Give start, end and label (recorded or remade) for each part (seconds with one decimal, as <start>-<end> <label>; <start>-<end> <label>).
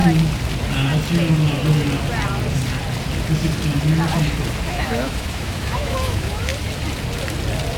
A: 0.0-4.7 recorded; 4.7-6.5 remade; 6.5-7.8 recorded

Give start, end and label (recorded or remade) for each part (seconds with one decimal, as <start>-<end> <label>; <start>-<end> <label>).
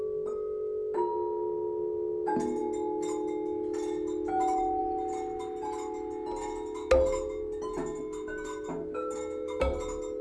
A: 0.0-10.2 recorded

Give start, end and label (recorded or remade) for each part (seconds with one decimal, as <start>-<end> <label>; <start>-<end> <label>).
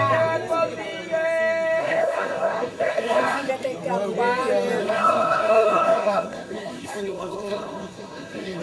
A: 0.0-1.8 recorded; 1.8-3.5 remade; 3.5-4.8 recorded; 4.8-8.6 remade